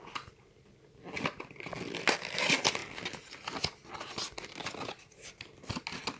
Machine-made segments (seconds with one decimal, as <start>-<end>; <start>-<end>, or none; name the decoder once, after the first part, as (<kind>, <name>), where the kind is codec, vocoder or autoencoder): none